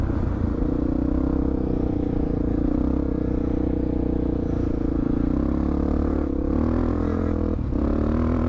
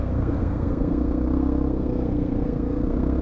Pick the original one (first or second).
first